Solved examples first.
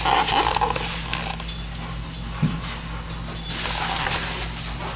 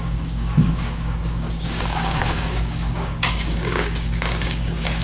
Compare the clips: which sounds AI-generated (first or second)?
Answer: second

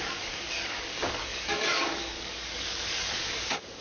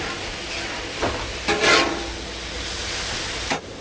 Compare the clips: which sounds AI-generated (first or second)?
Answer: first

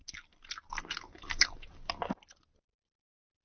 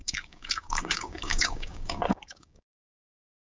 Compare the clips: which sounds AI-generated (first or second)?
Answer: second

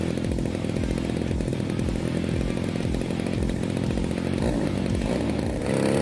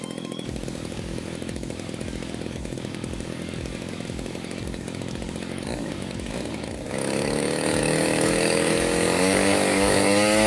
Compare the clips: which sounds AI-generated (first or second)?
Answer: second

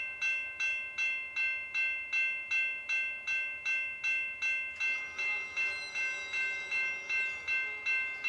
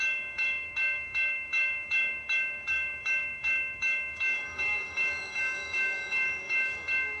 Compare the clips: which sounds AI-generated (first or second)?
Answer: second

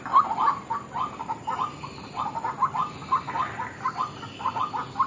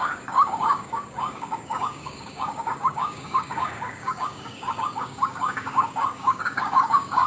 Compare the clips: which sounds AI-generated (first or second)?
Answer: second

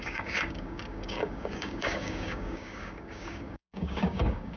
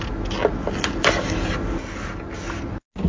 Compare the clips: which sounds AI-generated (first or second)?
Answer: first